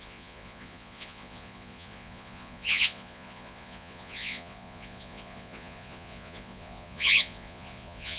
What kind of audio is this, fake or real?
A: fake